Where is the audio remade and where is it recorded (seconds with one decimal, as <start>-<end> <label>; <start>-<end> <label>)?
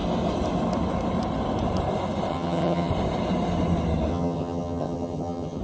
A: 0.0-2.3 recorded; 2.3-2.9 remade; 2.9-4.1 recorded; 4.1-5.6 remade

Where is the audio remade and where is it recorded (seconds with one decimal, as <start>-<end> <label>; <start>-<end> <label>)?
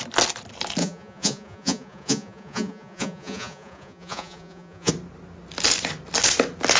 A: 0.0-0.8 recorded; 0.8-4.9 remade; 4.9-6.8 recorded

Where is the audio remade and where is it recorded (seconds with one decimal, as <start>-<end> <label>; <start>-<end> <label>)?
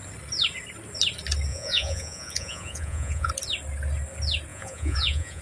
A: 0.0-1.5 recorded; 1.5-3.3 remade; 3.3-4.5 recorded; 4.5-5.4 remade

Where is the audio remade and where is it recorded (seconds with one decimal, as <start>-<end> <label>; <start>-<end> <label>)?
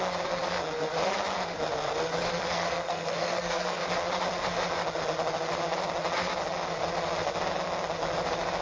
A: 0.0-2.4 recorded; 2.4-3.8 remade; 3.8-8.6 recorded